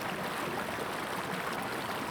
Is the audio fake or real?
real